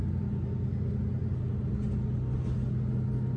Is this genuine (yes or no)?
yes